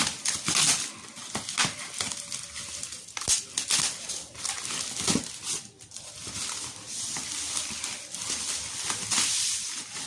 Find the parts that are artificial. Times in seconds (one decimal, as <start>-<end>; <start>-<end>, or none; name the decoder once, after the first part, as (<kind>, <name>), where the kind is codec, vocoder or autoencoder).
none